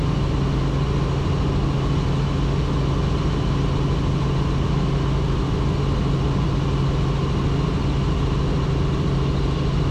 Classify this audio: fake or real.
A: real